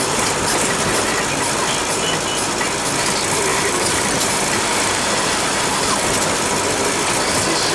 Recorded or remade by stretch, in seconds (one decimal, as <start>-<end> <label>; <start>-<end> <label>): 0.0-3.5 recorded; 3.5-5.6 remade; 5.6-7.7 recorded